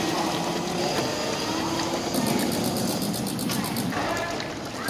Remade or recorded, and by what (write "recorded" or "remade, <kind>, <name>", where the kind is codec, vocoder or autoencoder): recorded